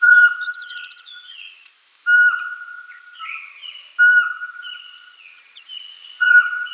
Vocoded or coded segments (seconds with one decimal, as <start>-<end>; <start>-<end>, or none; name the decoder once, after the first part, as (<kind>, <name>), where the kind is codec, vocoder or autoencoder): 0.0-1.7 (vocoder, Vocos); 2.3-3.9; 4.6-6.7